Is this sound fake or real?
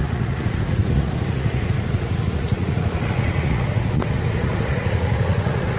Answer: fake